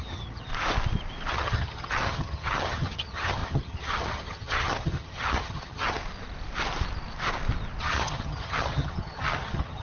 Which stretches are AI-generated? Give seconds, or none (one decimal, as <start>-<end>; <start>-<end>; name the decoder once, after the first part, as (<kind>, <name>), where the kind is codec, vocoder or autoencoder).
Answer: 0.0-0.5 (vocoder, HiFi-GAN); 1.3-6.0; 7.8-9.8